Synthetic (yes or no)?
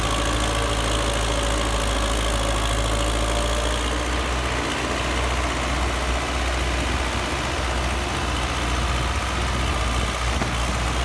no